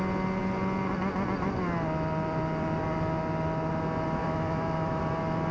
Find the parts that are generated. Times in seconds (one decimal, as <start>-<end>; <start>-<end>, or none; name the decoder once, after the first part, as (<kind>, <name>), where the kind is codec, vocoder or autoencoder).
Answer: 4.2-5.0 (autoencoder, DAC-VAE)